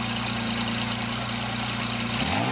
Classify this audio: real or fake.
real